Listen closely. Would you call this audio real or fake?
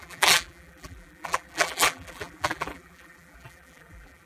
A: fake